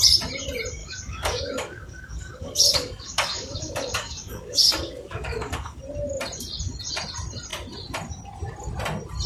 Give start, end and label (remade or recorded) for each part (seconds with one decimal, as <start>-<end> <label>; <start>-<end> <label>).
0.0-0.8 recorded; 0.8-5.8 remade; 5.8-9.3 recorded